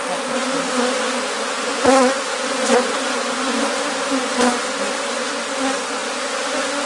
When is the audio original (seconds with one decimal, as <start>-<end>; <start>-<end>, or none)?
0.0-6.9